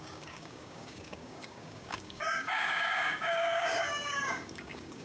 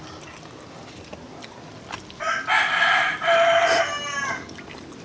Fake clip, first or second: first